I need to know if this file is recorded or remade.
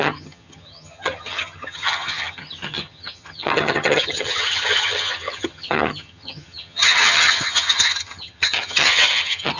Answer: remade